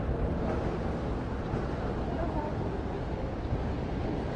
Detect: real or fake real